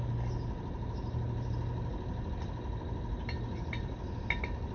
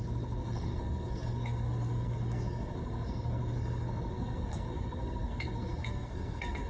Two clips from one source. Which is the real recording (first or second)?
first